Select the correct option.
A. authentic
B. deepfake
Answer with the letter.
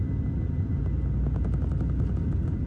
A